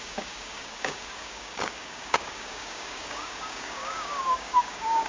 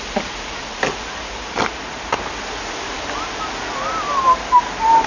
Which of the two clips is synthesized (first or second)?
first